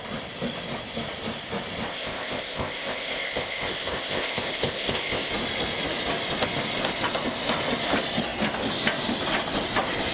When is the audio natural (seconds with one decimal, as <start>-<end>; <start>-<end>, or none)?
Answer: 0.0-1.9; 5.3-10.1